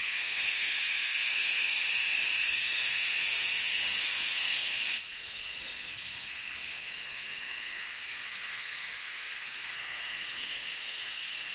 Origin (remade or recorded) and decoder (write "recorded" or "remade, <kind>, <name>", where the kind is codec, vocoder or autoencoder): remade, codec, SNAC